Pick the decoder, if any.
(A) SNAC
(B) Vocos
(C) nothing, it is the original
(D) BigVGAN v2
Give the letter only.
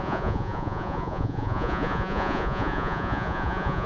B